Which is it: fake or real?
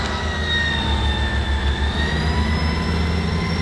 real